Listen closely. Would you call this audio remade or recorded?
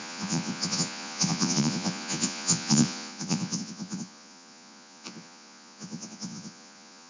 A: remade